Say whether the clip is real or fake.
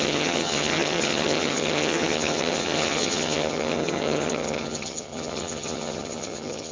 fake